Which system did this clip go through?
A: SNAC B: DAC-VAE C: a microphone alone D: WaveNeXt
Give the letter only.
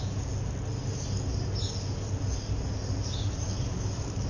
C